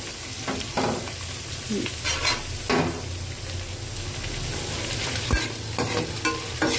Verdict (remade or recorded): recorded